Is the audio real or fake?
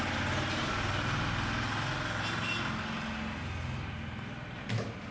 real